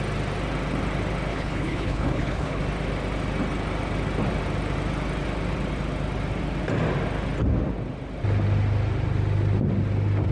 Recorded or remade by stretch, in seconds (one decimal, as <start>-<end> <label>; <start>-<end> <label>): 0.0-1.3 recorded; 1.3-2.6 remade; 2.6-10.3 recorded